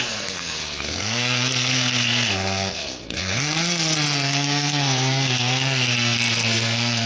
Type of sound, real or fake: fake